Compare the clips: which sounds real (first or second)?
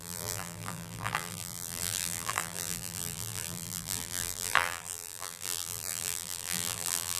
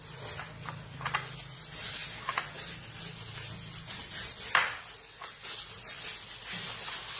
second